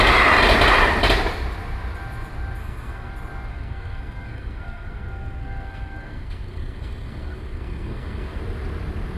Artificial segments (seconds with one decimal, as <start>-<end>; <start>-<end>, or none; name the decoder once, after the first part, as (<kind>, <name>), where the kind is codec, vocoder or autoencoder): 2.6-3.1 (codec, SNAC); 3.5-8.4